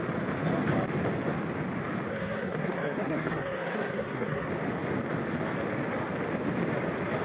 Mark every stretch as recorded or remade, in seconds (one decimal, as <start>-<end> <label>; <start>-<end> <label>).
0.0-2.1 recorded; 2.1-4.5 remade; 4.5-7.2 recorded